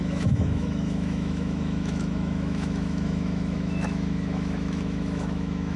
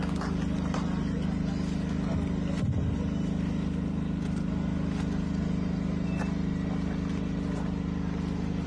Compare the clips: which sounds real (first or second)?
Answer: second